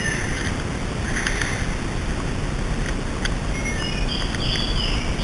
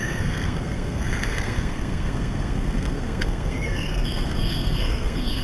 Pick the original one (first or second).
first